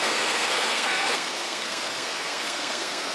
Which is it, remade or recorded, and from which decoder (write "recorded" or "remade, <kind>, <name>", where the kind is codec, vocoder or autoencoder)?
remade, codec, SNAC